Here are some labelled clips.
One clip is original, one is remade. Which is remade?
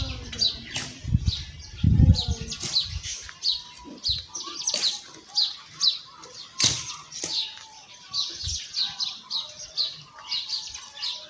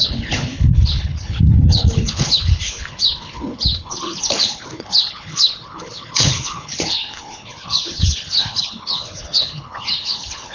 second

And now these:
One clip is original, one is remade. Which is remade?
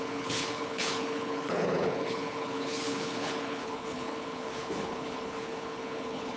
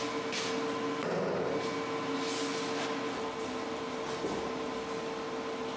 first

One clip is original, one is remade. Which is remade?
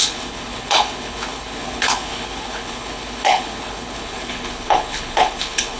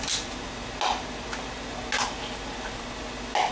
first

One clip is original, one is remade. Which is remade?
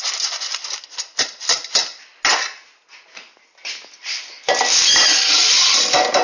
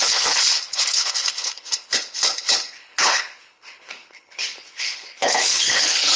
second